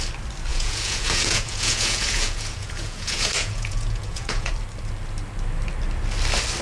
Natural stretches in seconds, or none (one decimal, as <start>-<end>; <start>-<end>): 0.0-0.5; 4.5-6.6